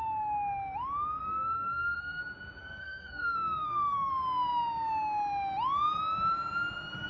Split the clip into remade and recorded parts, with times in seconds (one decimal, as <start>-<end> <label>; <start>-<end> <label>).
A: 0.0-1.2 recorded; 1.2-2.2 remade; 2.2-2.6 recorded; 2.6-4.1 remade; 4.1-7.1 recorded